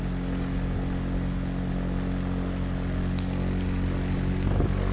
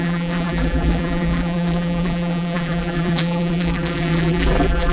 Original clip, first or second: first